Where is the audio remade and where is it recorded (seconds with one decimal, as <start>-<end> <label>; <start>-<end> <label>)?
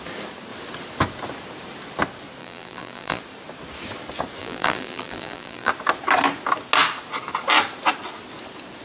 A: 0.0-2.4 recorded; 2.4-3.2 remade; 3.2-4.4 recorded; 4.4-5.7 remade; 5.7-8.8 recorded